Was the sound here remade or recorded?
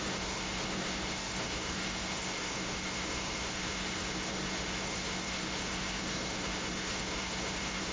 remade